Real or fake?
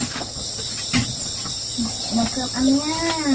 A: real